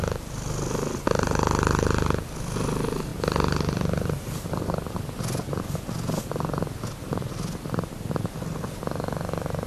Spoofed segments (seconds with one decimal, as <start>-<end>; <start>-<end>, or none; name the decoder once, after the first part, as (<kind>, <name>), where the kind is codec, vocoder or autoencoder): 3.1-4.9 (vocoder, BigVGAN v2)